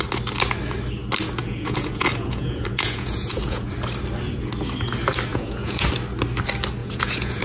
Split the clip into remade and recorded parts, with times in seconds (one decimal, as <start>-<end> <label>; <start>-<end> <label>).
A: 0.0-1.4 recorded; 1.4-3.7 remade; 3.7-5.3 recorded; 5.3-5.9 remade; 5.9-6.8 recorded; 6.8-7.4 remade